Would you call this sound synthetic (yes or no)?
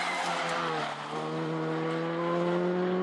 no